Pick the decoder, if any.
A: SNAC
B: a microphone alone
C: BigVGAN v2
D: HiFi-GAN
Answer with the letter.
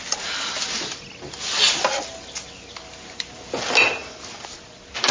B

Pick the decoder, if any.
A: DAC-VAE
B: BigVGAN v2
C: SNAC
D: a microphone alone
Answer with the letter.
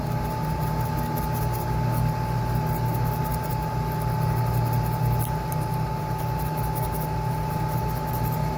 D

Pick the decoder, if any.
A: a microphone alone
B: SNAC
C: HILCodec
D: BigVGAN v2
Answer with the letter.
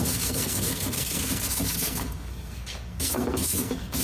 B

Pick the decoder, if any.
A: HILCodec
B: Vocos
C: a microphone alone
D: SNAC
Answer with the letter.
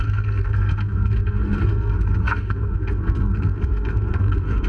D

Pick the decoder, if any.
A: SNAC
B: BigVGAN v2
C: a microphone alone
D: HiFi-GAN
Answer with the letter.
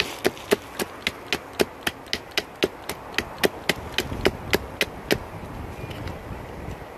C